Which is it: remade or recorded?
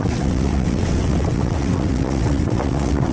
remade